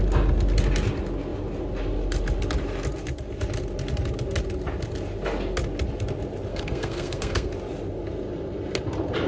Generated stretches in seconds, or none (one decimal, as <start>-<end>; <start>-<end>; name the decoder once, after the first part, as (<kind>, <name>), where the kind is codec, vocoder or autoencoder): 6.5-7.5 (codec, SNAC)